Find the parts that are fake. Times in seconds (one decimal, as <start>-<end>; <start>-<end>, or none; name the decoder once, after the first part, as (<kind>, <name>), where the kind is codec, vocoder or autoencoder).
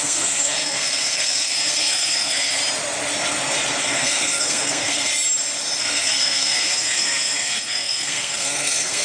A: 0.0-2.6 (codec, SNAC); 3.8-5.1; 5.8-9.0